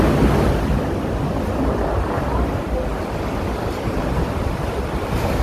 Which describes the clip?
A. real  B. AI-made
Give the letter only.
A